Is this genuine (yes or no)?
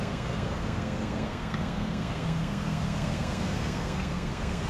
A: no